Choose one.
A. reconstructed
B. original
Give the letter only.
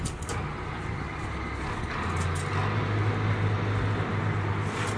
B